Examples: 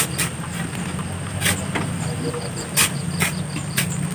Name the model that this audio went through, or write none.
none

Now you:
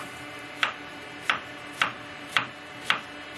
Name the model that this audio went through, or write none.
vocoder, BigVGAN v2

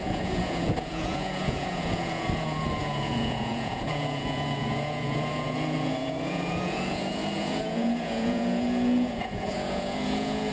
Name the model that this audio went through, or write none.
vocoder, Vocos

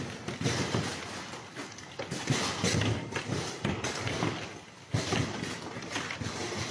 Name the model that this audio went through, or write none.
none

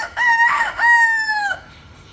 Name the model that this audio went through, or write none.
autoencoder, DAC-VAE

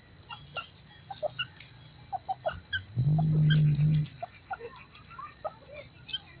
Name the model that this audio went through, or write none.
none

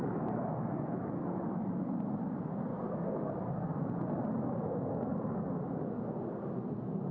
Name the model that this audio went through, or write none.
none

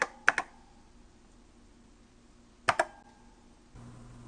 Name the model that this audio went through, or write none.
none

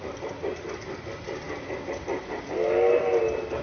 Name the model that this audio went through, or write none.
none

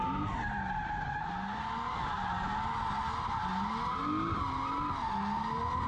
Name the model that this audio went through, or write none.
none